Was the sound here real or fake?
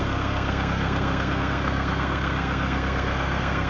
fake